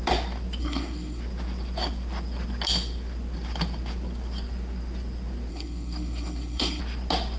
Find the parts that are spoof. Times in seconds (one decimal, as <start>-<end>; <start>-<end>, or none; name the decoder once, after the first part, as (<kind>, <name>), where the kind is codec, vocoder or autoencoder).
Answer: 0.6-1.2 (codec, SNAC); 5.5-6.8